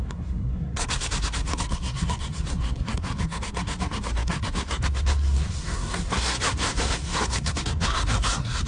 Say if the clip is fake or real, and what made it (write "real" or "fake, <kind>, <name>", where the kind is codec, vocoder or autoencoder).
fake, codec, SNAC